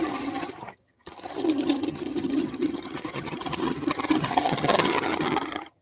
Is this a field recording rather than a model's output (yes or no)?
no